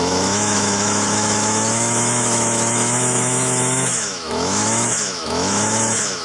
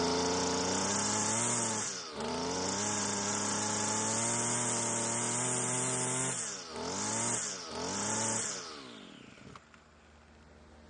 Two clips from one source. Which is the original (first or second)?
second